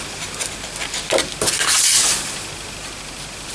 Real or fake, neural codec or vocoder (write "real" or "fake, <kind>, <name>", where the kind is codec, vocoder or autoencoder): real